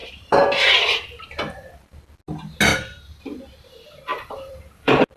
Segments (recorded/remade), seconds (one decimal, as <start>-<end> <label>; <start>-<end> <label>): 0.0-2.0 remade; 2.0-2.7 recorded; 2.7-3.2 remade; 3.2-4.1 recorded; 4.1-5.2 remade

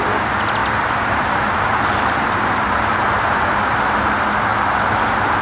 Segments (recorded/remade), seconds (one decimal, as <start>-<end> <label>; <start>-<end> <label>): 0.0-0.6 recorded; 0.6-3.8 remade; 3.8-4.5 recorded; 4.5-5.4 remade

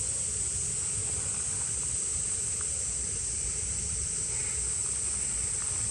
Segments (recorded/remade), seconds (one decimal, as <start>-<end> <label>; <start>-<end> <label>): 0.0-2.1 recorded; 2.1-3.2 remade; 3.2-5.9 recorded